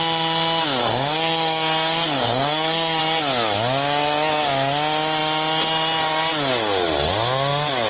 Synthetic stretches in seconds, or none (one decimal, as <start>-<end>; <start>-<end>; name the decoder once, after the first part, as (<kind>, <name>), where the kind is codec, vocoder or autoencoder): 0.8-3.0 (codec, SNAC)